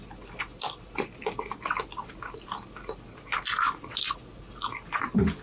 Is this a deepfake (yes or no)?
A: no